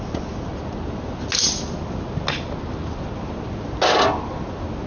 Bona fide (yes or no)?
yes